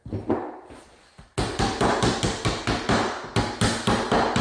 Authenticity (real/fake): real